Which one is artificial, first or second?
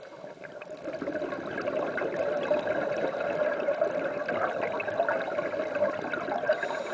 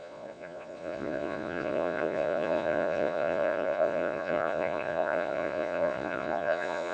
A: second